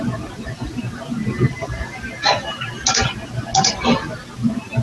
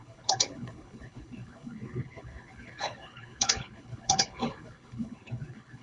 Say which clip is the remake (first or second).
second